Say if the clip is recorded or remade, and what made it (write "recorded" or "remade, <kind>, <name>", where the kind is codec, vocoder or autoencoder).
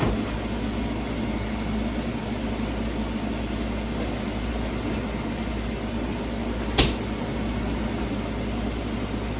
recorded